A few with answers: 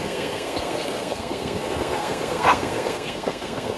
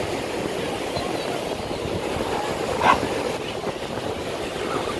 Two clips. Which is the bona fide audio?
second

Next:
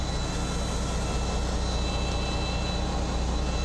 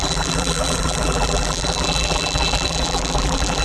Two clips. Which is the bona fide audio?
first